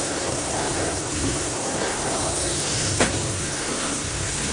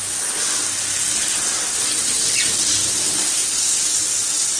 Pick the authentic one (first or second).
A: second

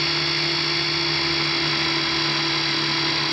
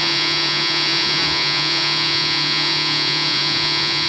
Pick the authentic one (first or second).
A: first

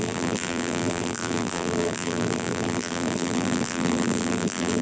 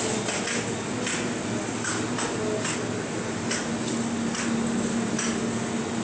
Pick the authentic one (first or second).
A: second